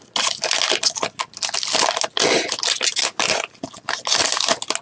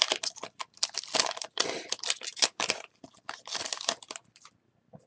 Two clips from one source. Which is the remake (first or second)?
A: second